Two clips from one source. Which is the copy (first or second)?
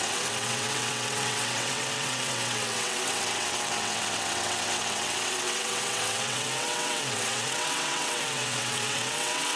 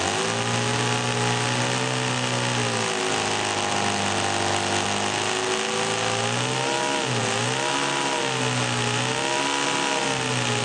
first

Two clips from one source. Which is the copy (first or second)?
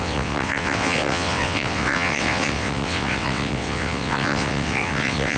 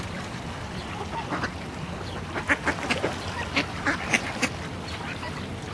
first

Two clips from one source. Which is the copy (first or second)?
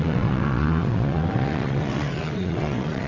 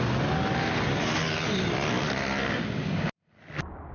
first